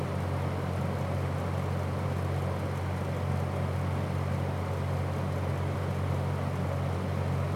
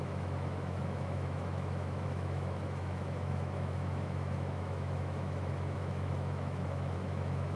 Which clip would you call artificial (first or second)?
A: second